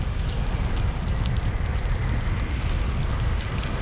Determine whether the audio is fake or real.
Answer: real